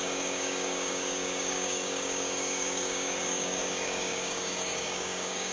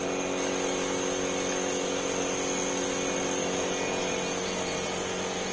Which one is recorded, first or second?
second